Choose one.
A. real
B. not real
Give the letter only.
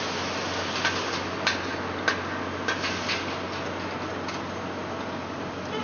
A